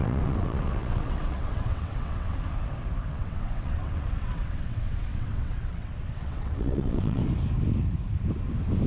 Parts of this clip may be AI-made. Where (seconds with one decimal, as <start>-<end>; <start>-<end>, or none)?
0.0-2.4; 3.1-7.2